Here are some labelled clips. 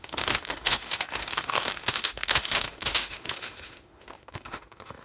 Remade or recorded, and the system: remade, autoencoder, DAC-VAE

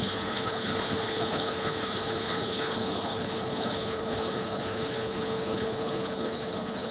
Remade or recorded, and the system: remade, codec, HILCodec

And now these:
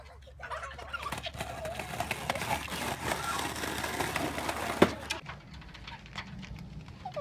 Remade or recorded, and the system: recorded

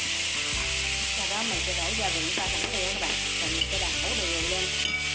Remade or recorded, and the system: recorded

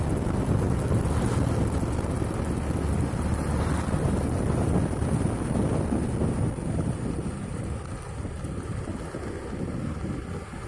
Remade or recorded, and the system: recorded